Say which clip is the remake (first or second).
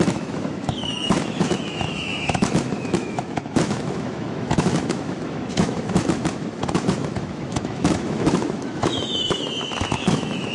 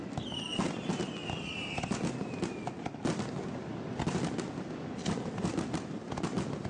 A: first